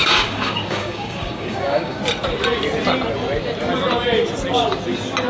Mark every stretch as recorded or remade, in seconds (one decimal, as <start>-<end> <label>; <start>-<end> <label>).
0.0-2.0 remade; 2.0-5.3 recorded